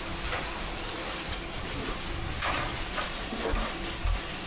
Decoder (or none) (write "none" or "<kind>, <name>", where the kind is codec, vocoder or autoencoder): none